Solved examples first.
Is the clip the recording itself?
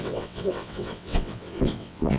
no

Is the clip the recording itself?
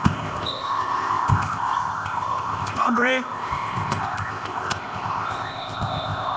no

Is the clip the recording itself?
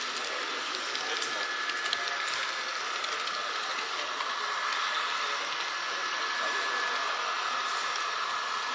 yes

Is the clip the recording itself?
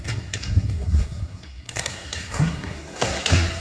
no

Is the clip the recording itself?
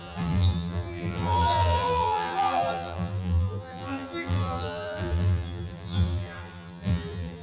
no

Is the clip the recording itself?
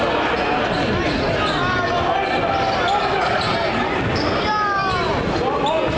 yes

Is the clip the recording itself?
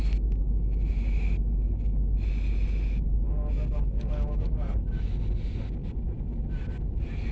yes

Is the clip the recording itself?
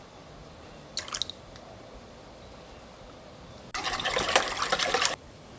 yes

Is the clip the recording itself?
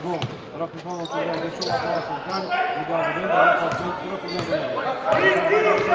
yes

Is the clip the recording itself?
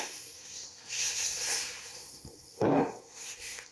no